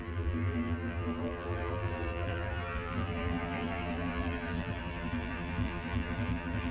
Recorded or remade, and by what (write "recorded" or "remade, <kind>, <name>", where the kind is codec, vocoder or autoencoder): remade, vocoder, BigVGAN v2